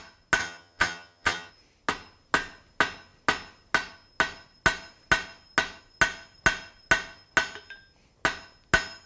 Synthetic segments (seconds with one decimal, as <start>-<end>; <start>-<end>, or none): 0.4-1.5